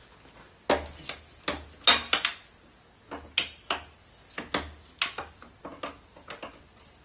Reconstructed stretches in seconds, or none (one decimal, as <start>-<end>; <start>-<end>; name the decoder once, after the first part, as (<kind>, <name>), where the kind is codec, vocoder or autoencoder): none